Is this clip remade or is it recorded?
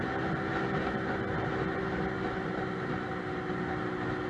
recorded